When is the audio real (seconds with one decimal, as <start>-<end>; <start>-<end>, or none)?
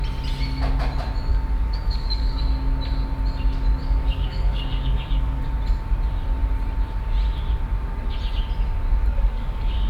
0.0-1.3; 2.4-3.8; 5.5-9.1